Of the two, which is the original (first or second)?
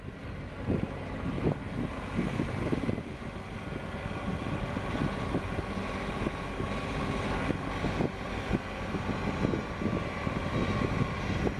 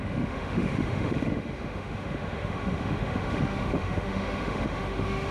first